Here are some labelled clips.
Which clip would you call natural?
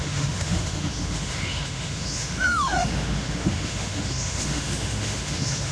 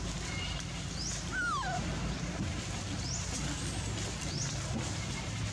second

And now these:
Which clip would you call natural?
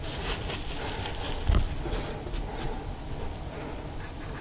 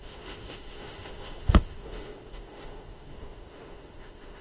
first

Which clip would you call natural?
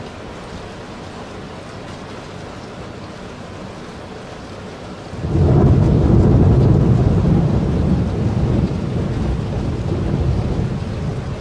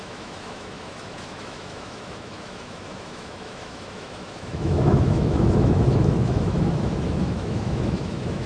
first